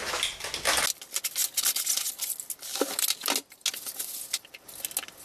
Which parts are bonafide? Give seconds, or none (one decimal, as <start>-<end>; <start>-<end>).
0.0-5.2